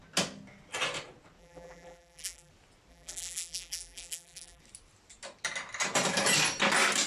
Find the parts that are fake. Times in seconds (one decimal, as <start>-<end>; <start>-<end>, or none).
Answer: 1.4-2.5; 2.9-4.6